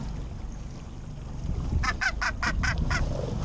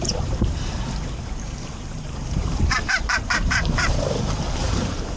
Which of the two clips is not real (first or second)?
second